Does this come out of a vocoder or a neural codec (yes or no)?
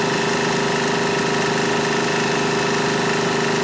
no